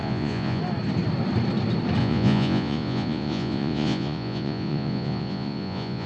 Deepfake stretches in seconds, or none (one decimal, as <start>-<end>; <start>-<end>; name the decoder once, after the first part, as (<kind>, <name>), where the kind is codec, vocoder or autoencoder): 0.0-0.6 (vocoder, Vocos); 2.0-6.1

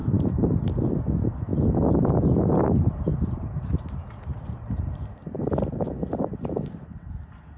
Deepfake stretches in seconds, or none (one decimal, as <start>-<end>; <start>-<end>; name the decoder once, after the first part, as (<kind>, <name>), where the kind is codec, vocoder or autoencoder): 0.0-1.0 (vocoder, BigVGAN v2); 3.1-7.6

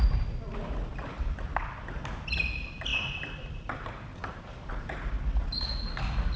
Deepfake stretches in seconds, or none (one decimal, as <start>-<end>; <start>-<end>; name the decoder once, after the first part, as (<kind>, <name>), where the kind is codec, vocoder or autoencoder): 2.9-4.7 (vocoder, BigVGAN v2)

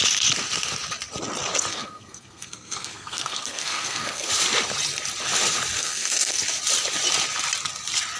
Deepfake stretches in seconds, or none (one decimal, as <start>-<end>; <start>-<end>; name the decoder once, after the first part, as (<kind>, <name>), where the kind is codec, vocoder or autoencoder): 1.7-4.3 (codec, SNAC); 5.8-6.4

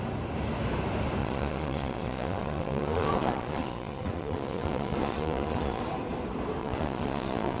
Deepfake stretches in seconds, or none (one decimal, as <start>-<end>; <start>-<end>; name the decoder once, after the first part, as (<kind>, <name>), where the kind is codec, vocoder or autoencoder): 1.2-5.8 (vocoder, Vocos); 6.6-7.6